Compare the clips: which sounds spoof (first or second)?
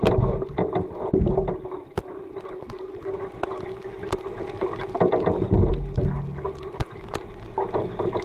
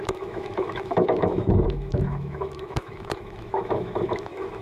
second